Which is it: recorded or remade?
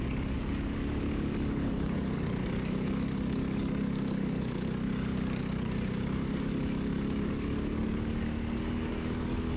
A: remade